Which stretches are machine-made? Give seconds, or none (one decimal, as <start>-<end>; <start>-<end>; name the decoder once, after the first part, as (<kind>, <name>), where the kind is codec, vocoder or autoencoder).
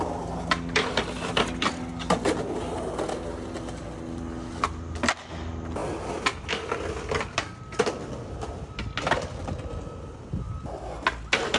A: none